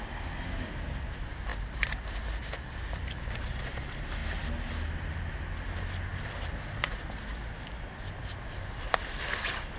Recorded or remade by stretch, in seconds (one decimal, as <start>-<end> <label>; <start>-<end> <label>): 0.0-1.5 recorded; 1.5-2.1 remade; 2.1-4.2 recorded; 4.2-4.9 remade; 4.9-9.8 recorded